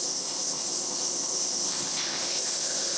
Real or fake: fake